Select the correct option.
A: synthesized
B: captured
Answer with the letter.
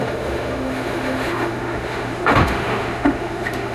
A